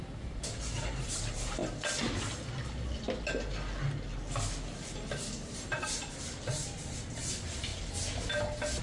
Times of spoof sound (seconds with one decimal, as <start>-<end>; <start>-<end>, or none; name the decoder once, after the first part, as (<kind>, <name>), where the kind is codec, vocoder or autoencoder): 0.0-1.6 (vocoder, BigVGAN v2); 6.1-7.7